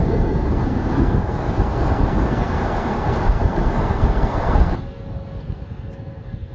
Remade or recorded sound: remade